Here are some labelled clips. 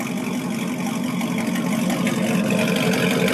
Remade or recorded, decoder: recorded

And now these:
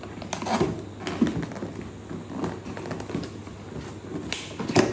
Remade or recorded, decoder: recorded